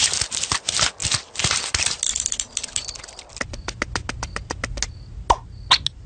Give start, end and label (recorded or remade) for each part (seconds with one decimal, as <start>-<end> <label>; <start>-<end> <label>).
0.0-6.1 recorded